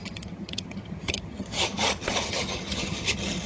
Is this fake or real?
fake